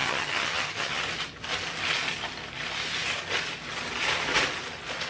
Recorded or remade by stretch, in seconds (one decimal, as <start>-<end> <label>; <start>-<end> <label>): 0.0-1.0 remade; 1.0-5.1 recorded